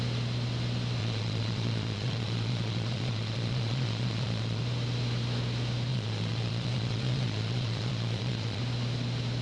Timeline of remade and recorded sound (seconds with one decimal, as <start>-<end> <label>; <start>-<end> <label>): 0.0-1.0 recorded; 1.0-4.6 remade; 4.6-5.9 recorded; 5.9-8.6 remade; 8.6-9.4 recorded